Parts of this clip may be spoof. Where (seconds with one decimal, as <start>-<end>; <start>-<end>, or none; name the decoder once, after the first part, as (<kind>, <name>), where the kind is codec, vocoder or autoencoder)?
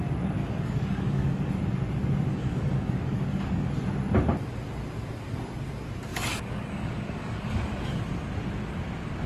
0.4-1.5 (codec, DAC); 2.3-3.7; 6.1-8.0